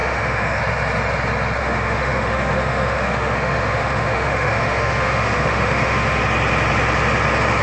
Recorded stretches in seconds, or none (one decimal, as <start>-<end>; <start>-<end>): 0.6-1.6; 6.2-7.6